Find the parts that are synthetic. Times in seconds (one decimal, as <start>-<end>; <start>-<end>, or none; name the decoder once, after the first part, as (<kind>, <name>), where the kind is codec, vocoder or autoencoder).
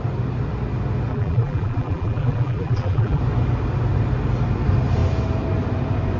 1.1-3.2 (vocoder, BigVGAN v2)